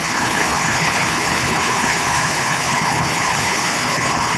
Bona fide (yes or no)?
no